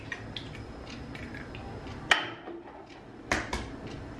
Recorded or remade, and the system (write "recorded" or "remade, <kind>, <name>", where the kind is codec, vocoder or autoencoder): recorded